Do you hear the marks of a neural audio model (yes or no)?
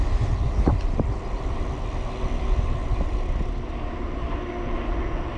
no